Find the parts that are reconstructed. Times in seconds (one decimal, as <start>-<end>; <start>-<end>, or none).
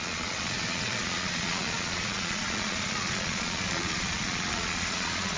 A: 0.0-5.4